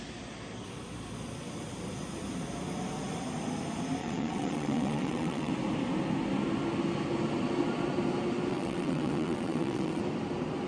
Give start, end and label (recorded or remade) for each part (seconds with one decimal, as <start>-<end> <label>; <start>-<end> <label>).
0.0-4.0 recorded; 4.0-5.5 remade; 5.5-8.5 recorded; 8.5-10.0 remade; 10.0-10.7 recorded